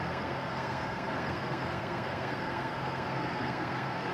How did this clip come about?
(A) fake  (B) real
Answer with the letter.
A